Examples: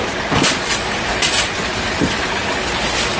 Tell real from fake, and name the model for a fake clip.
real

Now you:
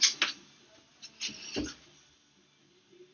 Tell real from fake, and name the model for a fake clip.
real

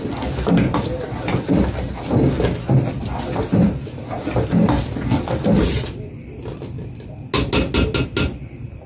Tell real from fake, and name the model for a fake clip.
real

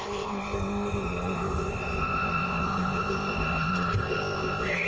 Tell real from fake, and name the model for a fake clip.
fake, codec, ZipCodec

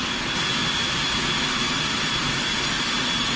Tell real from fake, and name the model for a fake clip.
real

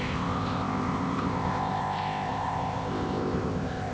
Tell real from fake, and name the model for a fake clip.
fake, codec, ZipCodec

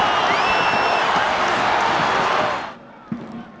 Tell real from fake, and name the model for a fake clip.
real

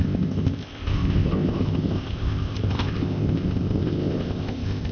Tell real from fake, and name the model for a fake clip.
fake, codec, ZipCodec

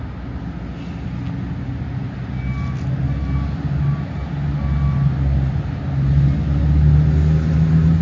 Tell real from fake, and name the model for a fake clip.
real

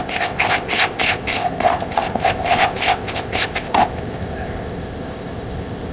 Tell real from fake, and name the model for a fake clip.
fake, codec, ZipCodec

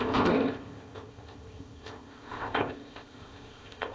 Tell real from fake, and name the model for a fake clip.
fake, codec, ZipCodec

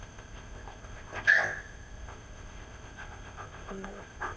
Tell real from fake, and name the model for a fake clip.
fake, codec, ZipCodec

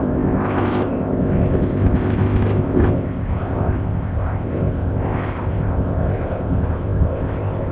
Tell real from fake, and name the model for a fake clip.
fake, codec, ZipCodec